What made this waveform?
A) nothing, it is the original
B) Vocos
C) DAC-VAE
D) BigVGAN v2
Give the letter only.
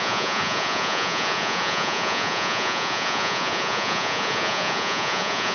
B